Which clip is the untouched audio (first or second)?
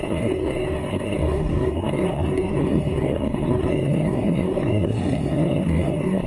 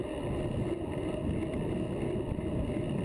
second